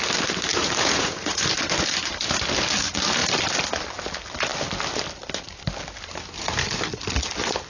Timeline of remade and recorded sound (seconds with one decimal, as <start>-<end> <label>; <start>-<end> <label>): 0.0-0.5 recorded; 0.5-1.5 remade; 1.5-7.7 recorded